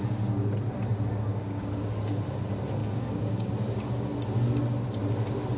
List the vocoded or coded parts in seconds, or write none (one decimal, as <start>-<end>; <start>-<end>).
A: 1.3-1.9; 2.8-3.5